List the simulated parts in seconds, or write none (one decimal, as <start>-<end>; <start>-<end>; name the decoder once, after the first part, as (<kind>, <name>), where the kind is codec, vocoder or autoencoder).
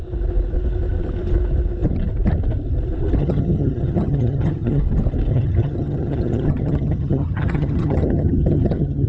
3.2-4.8 (vocoder, HiFi-GAN); 5.3-9.1